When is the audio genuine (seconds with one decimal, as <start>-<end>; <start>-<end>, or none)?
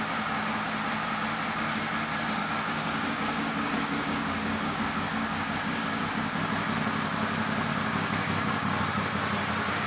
0.0-2.4; 6.0-7.7; 8.8-9.9